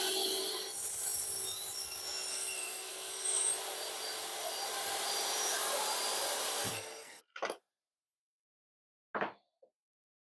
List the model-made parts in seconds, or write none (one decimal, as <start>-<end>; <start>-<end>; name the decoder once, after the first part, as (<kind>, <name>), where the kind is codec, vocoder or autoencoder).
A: 2.3-3.5 (codec, SNAC); 6.5-7.2